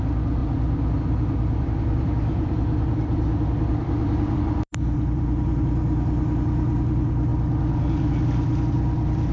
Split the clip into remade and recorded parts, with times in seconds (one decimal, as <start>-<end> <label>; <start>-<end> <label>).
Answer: 0.0-0.4 recorded; 0.4-4.4 remade; 4.4-9.3 recorded